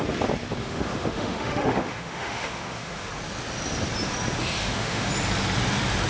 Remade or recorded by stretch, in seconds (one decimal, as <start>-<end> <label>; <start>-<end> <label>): 0.0-0.6 recorded; 0.6-3.1 remade; 3.1-4.4 recorded; 4.4-5.1 remade; 5.1-6.1 recorded